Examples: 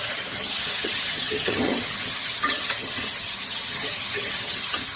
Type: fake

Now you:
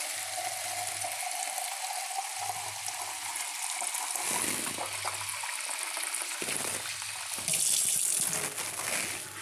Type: real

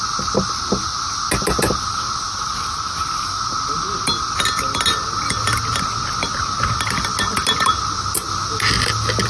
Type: real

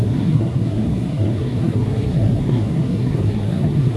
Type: fake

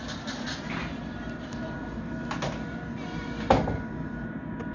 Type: real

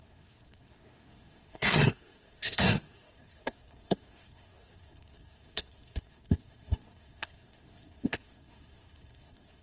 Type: fake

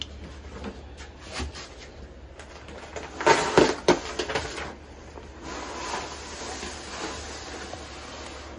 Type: real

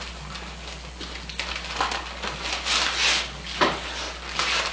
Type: real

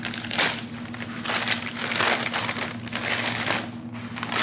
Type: real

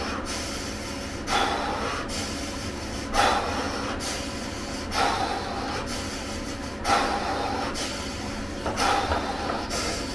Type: real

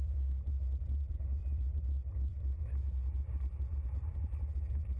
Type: fake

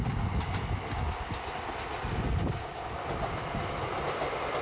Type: real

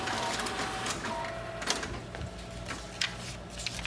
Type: real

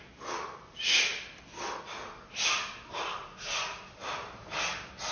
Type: real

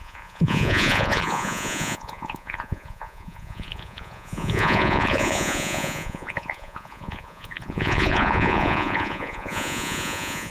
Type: fake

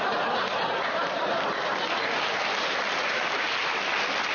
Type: real